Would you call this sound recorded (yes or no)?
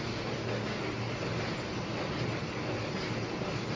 yes